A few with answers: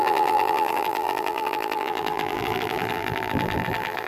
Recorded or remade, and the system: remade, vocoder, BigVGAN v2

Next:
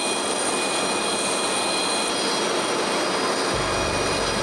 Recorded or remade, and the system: recorded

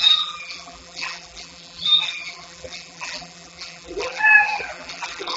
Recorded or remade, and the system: remade, vocoder, BigVGAN v2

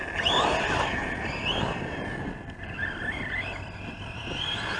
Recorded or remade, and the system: recorded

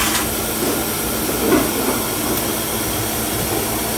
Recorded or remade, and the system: recorded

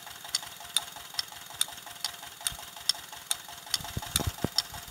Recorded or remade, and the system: recorded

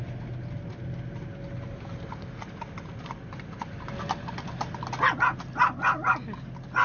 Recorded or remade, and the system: recorded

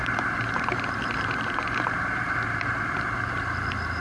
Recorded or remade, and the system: remade, vocoder, BigVGAN v2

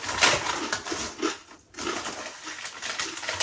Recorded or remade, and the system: remade, vocoder, BigVGAN v2